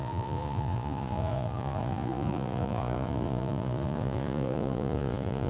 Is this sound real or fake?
fake